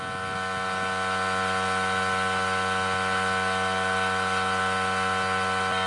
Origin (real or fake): real